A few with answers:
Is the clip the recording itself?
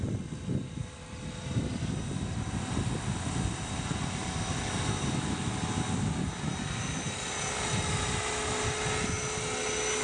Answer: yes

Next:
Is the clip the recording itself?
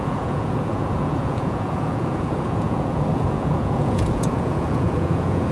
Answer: no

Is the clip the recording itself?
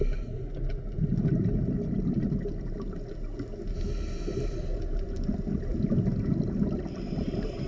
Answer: yes